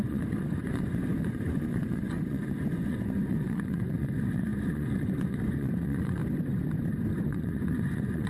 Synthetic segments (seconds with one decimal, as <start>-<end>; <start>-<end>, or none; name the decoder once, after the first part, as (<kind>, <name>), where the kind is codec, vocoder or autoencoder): 0.0-6.2 (vocoder, Vocos); 7.2-8.3